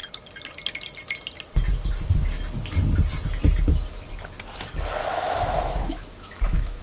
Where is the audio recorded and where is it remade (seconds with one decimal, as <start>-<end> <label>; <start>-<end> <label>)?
0.0-5.0 recorded; 5.0-6.8 remade